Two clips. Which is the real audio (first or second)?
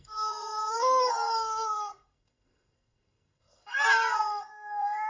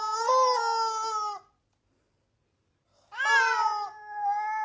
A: second